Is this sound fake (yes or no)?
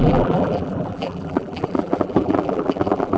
yes